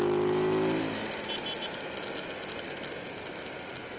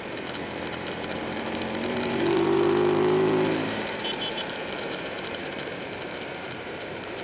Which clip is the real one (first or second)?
first